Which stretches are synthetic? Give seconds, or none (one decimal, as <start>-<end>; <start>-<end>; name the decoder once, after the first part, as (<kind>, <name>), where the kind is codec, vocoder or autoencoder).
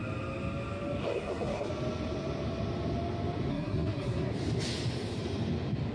1.0-1.7 (codec, SNAC); 3.5-4.3